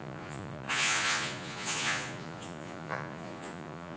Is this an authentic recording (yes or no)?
no